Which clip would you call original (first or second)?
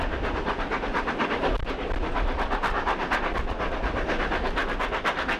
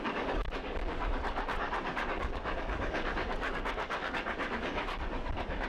first